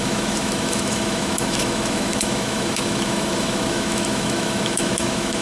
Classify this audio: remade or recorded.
remade